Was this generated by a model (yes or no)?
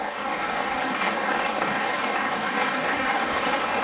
yes